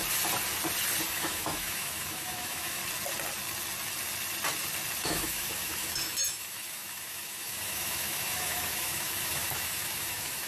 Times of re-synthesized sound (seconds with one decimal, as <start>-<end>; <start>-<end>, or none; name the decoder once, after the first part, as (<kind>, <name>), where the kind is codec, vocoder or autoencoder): 1.1-2.8 (autoencoder, DAC-VAE); 5.0-10.5